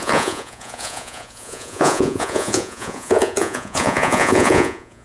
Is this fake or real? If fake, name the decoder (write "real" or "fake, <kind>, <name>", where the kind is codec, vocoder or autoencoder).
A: fake, vocoder, Vocos